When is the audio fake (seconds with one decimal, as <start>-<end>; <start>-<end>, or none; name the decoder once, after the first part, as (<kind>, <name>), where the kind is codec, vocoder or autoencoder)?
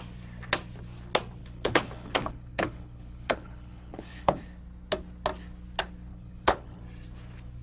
1.4-4.4 (codec, HILCodec); 6.1-6.8